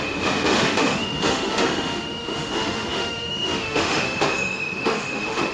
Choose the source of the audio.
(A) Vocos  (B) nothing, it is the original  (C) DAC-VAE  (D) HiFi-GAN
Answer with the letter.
C